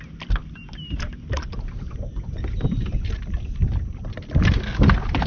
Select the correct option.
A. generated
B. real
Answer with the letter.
B